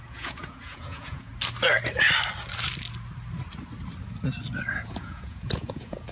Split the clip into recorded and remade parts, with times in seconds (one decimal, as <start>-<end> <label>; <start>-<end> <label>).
0.0-1.3 remade; 1.3-4.7 recorded; 4.7-6.1 remade